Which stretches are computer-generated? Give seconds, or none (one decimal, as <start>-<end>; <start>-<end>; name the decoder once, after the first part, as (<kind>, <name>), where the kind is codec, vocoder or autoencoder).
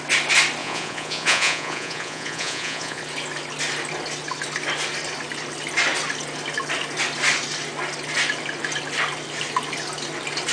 0.6-3.0 (vocoder, Vocos)